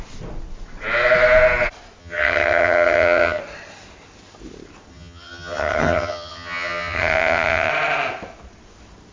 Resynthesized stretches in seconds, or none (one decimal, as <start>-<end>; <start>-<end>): 2.0-3.4; 4.9-7.7